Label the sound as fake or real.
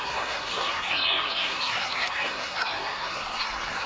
fake